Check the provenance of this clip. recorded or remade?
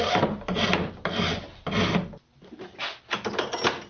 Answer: recorded